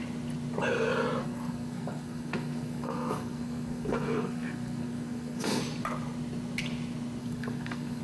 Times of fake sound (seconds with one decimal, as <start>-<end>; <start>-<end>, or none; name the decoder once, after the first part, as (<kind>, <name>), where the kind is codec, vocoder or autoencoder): 1.2-5.6 (codec, SNAC); 7.2-8.0